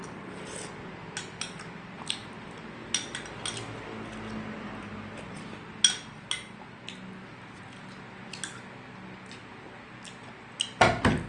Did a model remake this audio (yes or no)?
no